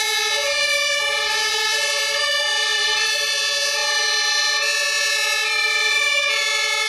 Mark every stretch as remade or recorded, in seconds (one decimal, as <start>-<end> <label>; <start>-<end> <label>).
0.0-1.7 recorded; 1.7-2.3 remade; 2.3-2.7 recorded; 2.7-3.4 remade; 3.4-6.9 recorded